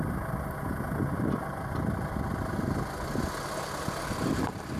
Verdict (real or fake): real